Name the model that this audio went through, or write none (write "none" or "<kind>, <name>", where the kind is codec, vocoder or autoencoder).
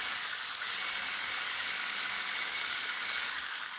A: codec, DAC